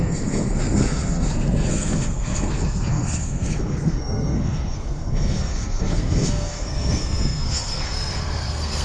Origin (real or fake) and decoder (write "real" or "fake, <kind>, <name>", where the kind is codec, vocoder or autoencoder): fake, codec, SNAC